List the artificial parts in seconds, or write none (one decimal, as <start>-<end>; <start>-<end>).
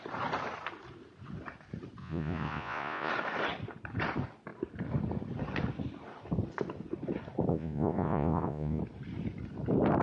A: 2.0-3.1; 7.5-8.8